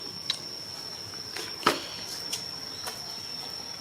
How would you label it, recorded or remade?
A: recorded